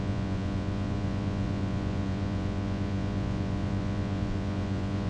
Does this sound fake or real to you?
fake